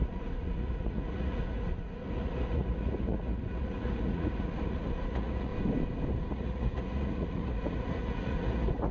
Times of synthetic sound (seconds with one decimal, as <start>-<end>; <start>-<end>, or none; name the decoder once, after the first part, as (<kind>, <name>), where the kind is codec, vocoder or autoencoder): 0.0-5.5 (vocoder, Vocos); 6.1-8.9